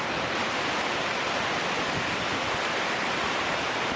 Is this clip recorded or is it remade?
remade